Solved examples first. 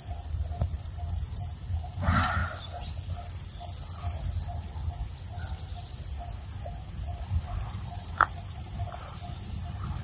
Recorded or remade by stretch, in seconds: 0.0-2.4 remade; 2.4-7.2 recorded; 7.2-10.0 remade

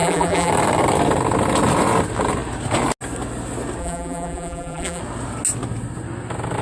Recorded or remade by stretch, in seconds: 0.0-0.5 remade; 0.5-3.8 recorded; 3.8-5.0 remade; 5.0-6.6 recorded

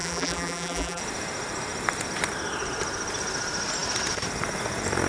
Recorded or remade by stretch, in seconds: 0.0-1.0 remade; 1.0-5.1 recorded

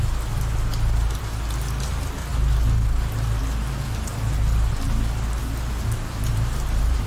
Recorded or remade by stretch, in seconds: 0.0-5.4 recorded; 5.4-7.1 remade

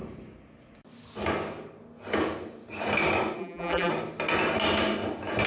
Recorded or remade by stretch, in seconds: 0.0-3.4 recorded; 3.4-3.9 remade; 3.9-5.5 recorded

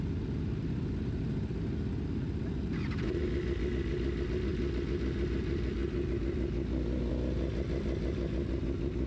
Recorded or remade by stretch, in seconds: 0.0-9.1 recorded

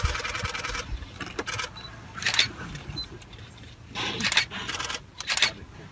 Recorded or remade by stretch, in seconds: 0.0-5.9 recorded

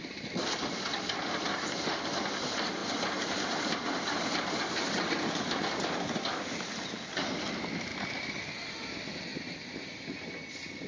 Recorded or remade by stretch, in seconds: 0.0-7.9 remade; 7.9-8.9 recorded; 8.9-9.3 remade; 9.3-10.5 recorded; 10.5-10.9 remade